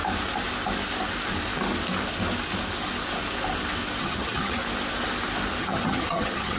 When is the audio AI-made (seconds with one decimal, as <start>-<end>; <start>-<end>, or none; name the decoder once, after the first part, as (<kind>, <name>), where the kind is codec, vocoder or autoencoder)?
4.0-4.6 (vocoder, HiFi-GAN); 5.6-6.6